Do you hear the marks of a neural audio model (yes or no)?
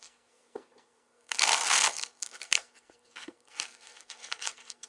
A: yes